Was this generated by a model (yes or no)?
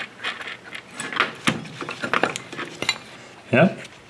no